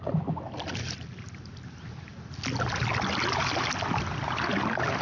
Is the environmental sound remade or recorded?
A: recorded